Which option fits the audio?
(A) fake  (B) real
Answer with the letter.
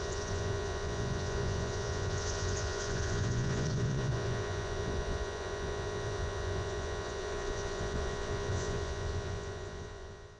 A